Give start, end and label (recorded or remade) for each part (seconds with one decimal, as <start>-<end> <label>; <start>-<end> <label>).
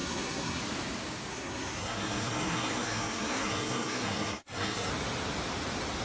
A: 0.0-0.6 remade; 0.6-1.3 recorded; 1.3-4.9 remade; 4.9-6.0 recorded